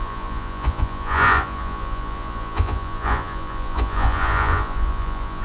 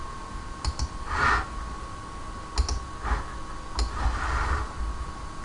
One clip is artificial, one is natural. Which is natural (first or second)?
second